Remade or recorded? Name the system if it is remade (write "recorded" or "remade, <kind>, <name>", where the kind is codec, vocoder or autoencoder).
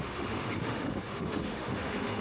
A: remade, autoencoder, DAC-VAE